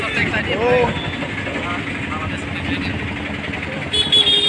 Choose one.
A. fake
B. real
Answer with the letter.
B